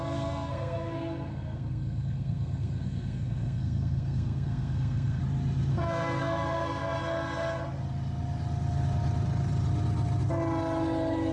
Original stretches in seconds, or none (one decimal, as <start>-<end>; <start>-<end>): 5.2-5.7; 7.0-11.3